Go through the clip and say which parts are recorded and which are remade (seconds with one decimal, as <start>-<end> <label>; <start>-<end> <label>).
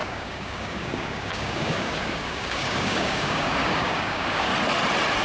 0.0-4.5 remade; 4.5-5.2 recorded